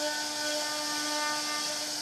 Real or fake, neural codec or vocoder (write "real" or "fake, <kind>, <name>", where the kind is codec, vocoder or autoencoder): real